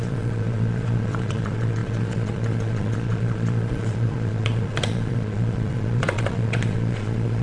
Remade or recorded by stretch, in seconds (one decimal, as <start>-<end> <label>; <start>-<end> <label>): 0.0-7.4 remade